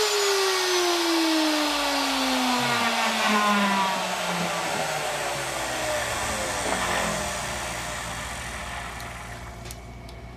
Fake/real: real